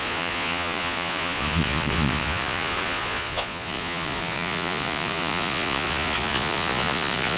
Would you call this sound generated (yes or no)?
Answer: yes